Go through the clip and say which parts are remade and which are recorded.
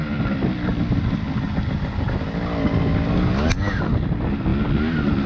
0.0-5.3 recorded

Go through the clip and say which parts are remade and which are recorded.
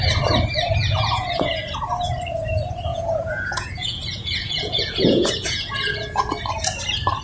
0.0-0.8 recorded; 0.8-1.6 remade; 1.6-2.9 recorded; 2.9-6.3 remade; 6.3-7.2 recorded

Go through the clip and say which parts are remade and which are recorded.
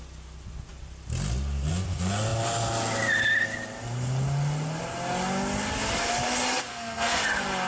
0.0-6.7 recorded; 6.7-7.2 remade; 7.2-7.7 recorded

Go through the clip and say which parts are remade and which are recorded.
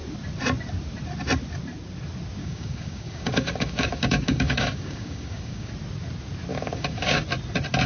0.0-2.4 recorded; 2.4-5.7 remade; 5.7-6.5 recorded; 6.5-7.2 remade; 7.2-7.9 recorded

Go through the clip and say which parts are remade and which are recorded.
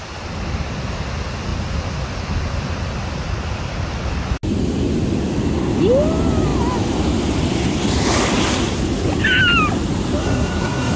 0.0-10.2 recorded; 10.2-11.0 remade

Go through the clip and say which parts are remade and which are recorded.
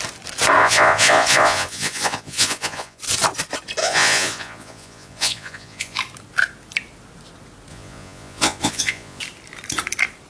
0.0-0.6 recorded; 0.6-3.0 remade; 3.0-3.8 recorded; 3.8-6.0 remade; 6.0-7.7 recorded; 7.7-9.2 remade; 9.2-10.3 recorded